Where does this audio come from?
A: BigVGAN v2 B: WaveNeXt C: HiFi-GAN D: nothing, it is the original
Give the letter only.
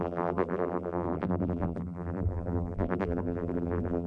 A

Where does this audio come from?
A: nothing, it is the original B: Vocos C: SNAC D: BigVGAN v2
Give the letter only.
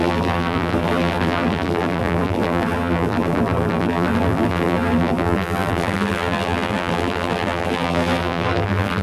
D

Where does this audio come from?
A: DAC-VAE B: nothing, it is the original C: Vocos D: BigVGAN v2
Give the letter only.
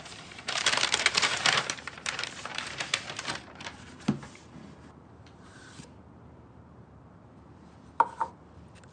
D